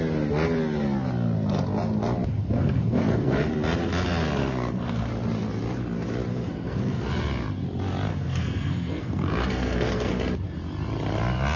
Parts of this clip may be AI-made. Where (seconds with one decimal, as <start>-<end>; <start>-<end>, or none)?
2.4-3.5; 4.4-5.1; 6.3-7.1; 8.1-10.2